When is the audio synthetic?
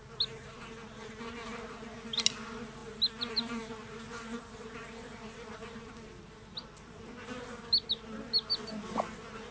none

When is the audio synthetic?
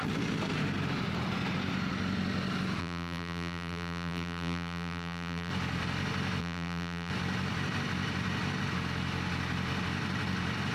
2.8-5.5 (vocoder, BigVGAN v2); 6.4-7.1